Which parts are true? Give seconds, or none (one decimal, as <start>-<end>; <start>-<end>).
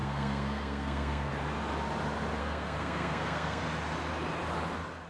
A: 1.3-2.4; 3.6-5.1